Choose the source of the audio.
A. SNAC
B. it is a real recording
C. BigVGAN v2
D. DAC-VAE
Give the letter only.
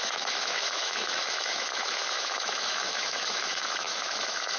D